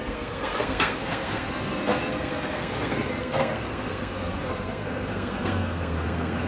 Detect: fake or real fake